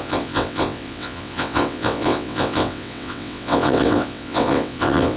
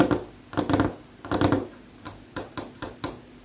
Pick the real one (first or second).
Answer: second